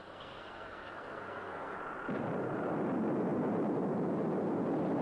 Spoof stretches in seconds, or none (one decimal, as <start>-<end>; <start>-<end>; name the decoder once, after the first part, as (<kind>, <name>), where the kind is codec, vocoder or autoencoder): 0.0-1.8 (codec, SNAC)